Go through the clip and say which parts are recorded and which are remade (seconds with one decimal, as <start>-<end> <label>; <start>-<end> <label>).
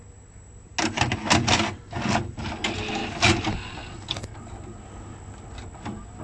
0.0-6.2 recorded